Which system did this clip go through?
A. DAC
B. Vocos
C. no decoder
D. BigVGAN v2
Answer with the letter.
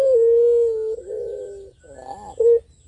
C